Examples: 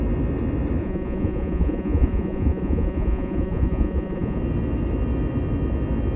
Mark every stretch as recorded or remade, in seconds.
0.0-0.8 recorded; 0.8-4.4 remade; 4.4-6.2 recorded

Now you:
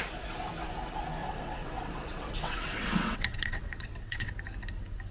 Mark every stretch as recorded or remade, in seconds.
0.0-1.2 recorded; 1.2-4.3 remade; 4.3-5.1 recorded

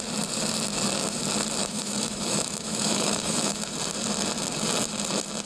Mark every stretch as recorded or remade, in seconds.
0.0-1.6 recorded; 1.6-3.6 remade; 3.6-5.5 recorded

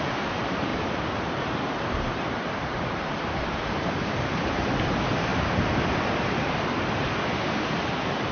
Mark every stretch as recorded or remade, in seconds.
0.0-5.3 remade; 5.3-8.3 recorded

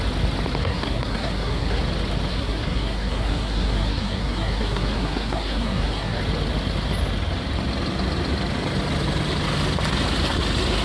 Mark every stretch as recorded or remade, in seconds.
0.0-0.6 recorded; 0.6-1.8 remade; 1.8-2.3 recorded; 2.3-6.2 remade; 6.2-10.8 recorded

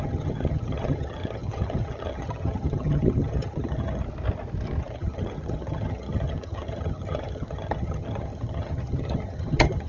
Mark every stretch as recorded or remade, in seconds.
0.0-4.0 remade; 4.0-4.8 recorded; 4.8-9.9 remade

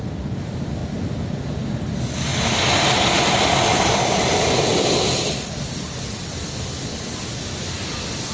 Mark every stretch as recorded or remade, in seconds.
0.0-0.8 remade; 0.8-1.4 recorded; 1.4-2.3 remade; 2.3-3.2 recorded; 3.2-8.3 remade

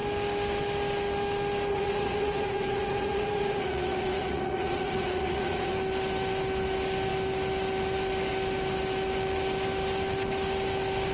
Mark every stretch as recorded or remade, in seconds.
0.0-1.7 recorded; 1.7-5.7 remade; 5.7-11.1 recorded